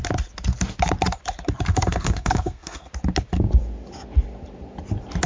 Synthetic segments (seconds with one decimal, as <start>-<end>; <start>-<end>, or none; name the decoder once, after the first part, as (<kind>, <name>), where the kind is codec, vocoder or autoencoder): 1.7-2.9 (codec, SNAC)